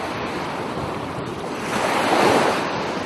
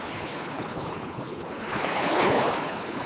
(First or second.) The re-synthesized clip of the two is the second